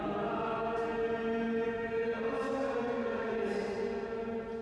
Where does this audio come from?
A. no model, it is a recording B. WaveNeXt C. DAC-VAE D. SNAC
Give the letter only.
A